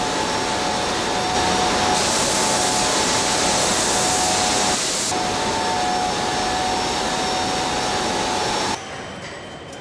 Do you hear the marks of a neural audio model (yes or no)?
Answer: no